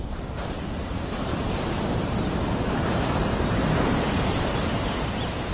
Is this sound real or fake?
fake